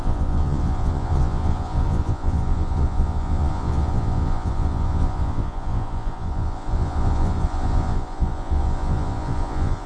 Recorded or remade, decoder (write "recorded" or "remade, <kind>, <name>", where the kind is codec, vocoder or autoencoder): remade, vocoder, Vocos